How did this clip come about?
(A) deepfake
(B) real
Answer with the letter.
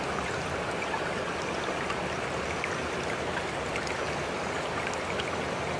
B